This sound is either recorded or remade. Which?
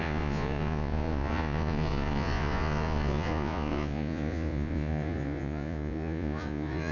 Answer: remade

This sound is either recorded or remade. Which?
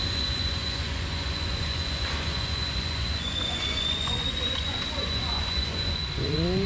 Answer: remade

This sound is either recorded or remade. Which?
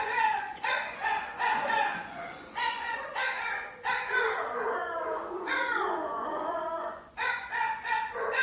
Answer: remade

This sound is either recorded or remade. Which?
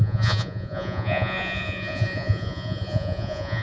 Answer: remade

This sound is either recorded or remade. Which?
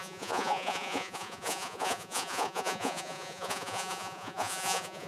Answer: remade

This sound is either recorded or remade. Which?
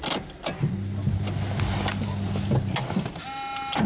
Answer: recorded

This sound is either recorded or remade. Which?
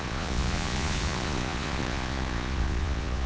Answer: remade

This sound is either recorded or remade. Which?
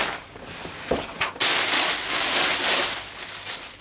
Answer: recorded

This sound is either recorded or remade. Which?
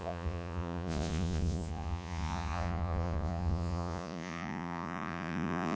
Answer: remade